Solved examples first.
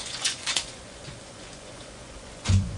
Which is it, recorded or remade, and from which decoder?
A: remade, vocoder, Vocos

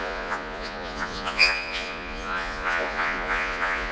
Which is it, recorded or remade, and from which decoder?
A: remade, vocoder, Vocos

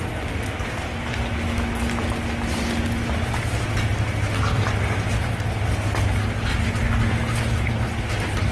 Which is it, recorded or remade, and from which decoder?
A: recorded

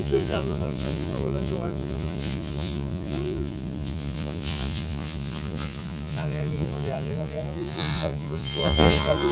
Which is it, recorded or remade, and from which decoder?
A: remade, vocoder, Vocos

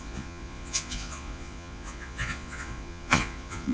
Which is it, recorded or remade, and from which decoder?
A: remade, vocoder, Vocos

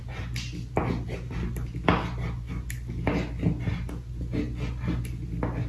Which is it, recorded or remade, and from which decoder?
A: recorded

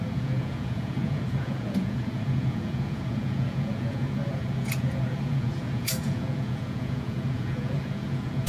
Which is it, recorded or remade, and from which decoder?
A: remade, vocoder, Vocos